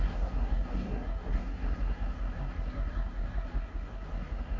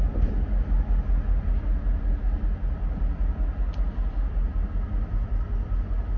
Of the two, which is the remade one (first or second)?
first